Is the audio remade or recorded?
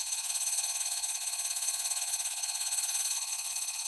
remade